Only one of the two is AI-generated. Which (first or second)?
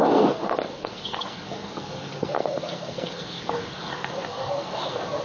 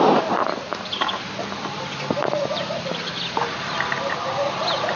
first